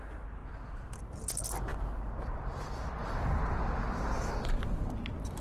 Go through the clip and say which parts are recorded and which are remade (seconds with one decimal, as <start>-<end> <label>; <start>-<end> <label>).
0.0-0.4 recorded; 0.4-1.0 remade; 1.0-1.7 recorded; 1.7-4.9 remade; 4.9-5.4 recorded